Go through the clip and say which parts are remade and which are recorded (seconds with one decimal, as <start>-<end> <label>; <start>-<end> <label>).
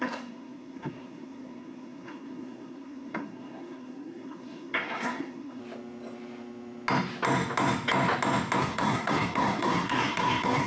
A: 0.0-5.6 remade; 5.6-8.6 recorded; 8.6-10.7 remade